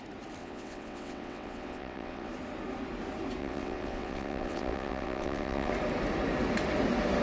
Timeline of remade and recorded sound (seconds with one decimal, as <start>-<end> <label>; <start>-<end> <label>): 0.0-0.4 recorded; 0.4-2.3 remade; 2.3-3.4 recorded; 3.4-5.7 remade; 5.7-7.2 recorded